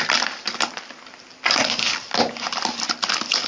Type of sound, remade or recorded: recorded